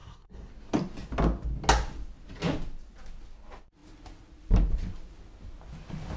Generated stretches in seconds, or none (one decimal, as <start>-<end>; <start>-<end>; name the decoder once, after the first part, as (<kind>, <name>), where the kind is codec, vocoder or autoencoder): 0.0-0.5 (codec, SNAC)

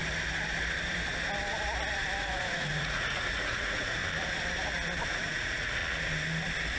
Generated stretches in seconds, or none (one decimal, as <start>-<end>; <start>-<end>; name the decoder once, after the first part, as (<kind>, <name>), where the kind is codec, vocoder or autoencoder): 2.2-4.0 (vocoder, Vocos); 5.1-5.8

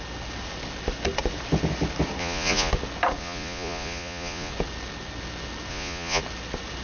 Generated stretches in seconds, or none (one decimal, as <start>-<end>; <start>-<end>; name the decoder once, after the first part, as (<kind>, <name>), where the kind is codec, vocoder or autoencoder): 2.2-2.7 (vocoder, Vocos); 3.2-4.5; 5.7-6.2

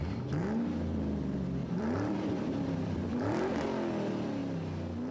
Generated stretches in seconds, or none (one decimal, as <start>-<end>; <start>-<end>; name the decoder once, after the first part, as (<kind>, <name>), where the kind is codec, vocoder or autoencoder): 1.6-3.5 (vocoder, BigVGAN v2)

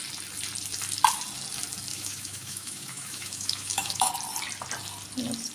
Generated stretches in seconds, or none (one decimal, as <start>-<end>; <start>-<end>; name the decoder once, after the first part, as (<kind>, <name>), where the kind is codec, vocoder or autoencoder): 1.9-4.1 (autoencoder, DAC-VAE)